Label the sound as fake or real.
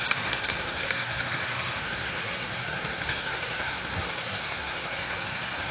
fake